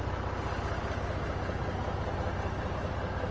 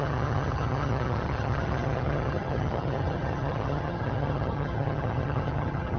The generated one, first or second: second